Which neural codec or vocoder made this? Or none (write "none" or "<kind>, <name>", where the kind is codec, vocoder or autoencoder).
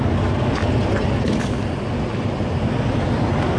none